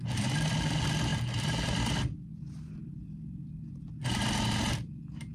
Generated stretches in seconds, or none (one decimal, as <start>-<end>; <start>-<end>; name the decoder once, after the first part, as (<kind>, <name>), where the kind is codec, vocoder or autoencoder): none